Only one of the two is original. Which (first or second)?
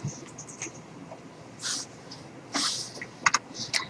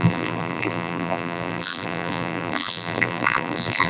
first